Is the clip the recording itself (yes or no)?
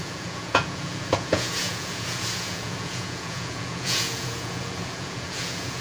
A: no